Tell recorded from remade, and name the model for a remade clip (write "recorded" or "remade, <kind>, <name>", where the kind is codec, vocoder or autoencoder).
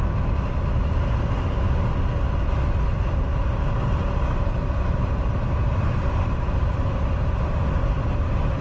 recorded